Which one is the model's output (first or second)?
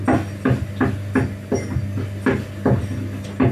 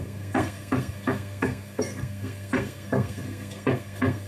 second